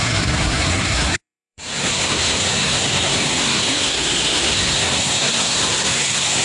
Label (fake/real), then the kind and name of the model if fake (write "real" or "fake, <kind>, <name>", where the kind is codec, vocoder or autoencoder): fake, codec, SNAC